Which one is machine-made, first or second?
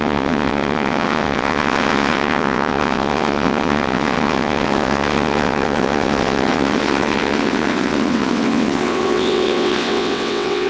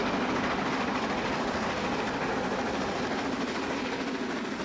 first